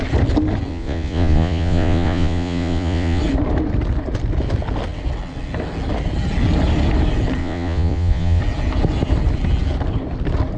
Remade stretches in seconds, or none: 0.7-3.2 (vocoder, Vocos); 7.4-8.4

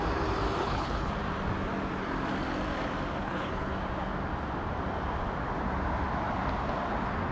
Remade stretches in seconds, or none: 0.6-1.1 (codec, HILCodec); 3.2-3.7